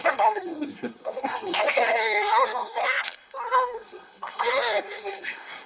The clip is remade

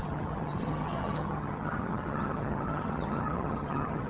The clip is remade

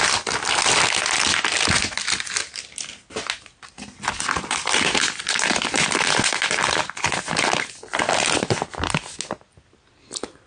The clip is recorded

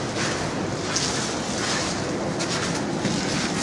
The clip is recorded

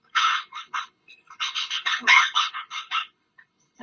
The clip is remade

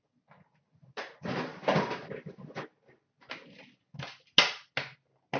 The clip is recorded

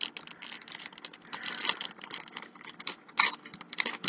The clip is recorded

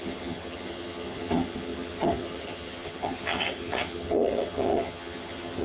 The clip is remade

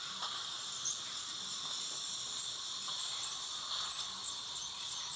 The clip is recorded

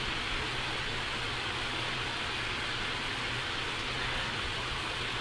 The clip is remade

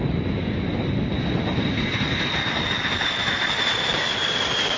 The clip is recorded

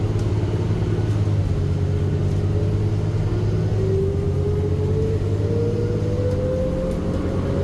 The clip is recorded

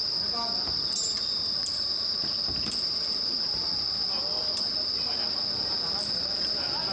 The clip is recorded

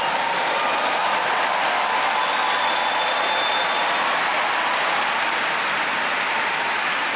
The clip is recorded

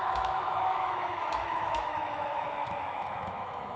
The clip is remade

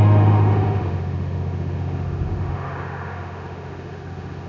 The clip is remade